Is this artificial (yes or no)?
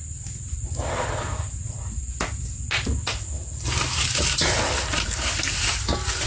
no